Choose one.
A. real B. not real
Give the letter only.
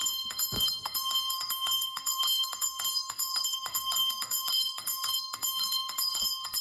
B